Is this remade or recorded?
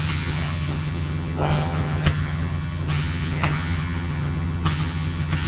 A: remade